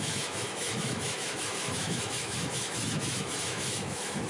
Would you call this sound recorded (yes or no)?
no